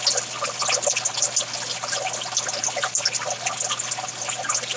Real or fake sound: real